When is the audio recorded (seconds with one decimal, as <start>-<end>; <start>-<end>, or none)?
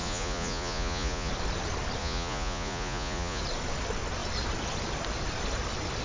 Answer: 1.3-2.0; 3.4-6.0